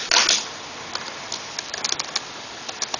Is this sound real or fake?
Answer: real